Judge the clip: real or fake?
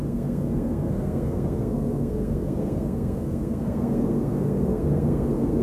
fake